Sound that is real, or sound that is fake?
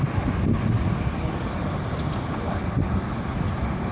real